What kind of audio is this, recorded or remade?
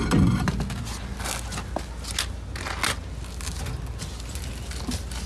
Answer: recorded